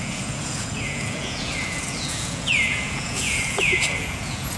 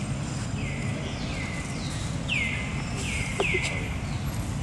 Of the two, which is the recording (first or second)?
second